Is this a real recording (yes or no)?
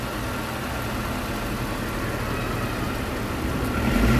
yes